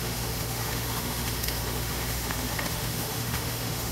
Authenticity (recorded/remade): remade